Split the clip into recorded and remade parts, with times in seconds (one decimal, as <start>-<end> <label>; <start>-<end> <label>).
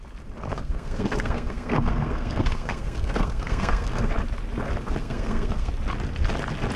0.0-0.5 recorded; 0.5-4.1 remade; 4.1-5.0 recorded; 5.0-5.7 remade; 5.7-6.8 recorded